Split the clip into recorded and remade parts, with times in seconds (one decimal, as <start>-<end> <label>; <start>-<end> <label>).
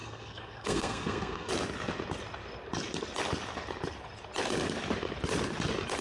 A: 0.0-1.5 remade; 1.5-6.0 recorded